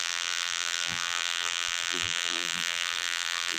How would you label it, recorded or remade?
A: remade